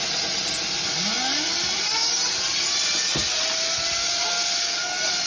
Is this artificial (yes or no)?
no